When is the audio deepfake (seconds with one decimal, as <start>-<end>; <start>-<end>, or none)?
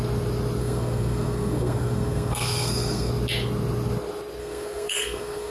0.6-3.1; 4.4-5.5